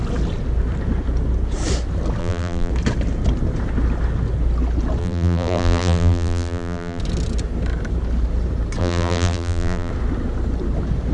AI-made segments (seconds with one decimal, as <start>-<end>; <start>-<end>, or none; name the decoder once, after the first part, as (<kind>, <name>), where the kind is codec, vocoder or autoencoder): 2.2-2.7 (vocoder, BigVGAN v2); 5.0-7.0; 8.8-9.9

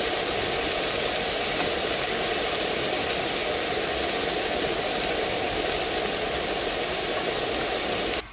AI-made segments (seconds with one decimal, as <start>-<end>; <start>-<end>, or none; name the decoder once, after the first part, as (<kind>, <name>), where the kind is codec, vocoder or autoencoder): none

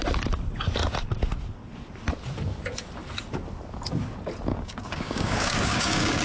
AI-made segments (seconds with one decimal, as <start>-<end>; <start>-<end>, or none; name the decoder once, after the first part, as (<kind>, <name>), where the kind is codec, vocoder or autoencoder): 4.5-6.2 (codec, DAC)

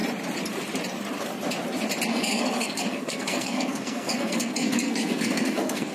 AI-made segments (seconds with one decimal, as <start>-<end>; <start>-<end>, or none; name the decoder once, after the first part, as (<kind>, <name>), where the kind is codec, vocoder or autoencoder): 2.1-5.9 (codec, SNAC)